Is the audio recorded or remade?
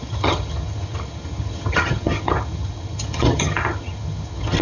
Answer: remade